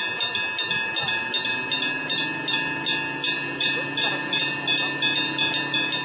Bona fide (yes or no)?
yes